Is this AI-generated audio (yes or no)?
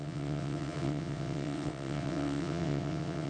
yes